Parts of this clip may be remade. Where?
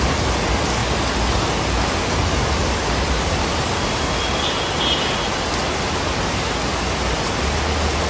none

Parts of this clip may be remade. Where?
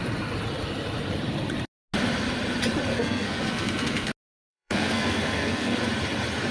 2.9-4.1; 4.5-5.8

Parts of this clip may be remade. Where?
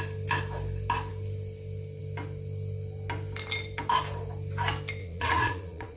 5.0-6.0